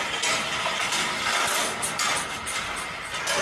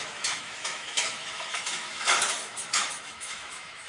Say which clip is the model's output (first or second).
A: second